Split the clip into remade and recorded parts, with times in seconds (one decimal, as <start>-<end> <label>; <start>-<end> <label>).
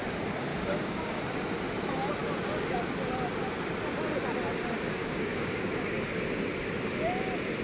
0.0-0.5 recorded; 0.5-1.2 remade; 1.2-5.0 recorded; 5.0-6.0 remade; 6.0-7.6 recorded